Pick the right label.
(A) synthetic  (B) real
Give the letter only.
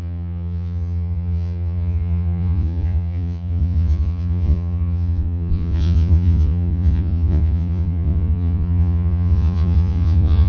A